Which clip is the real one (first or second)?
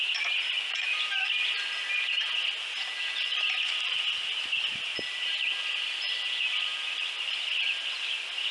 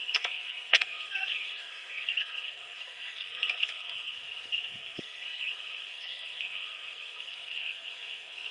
first